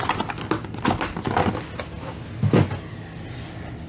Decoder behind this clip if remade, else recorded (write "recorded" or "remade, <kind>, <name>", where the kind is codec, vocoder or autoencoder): recorded